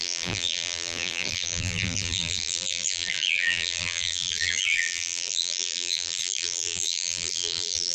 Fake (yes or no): yes